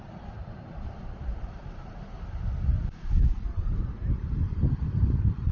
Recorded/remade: remade